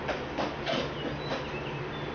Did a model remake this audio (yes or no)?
no